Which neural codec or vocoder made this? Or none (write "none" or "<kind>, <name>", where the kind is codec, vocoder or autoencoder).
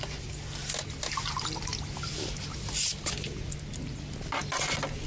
none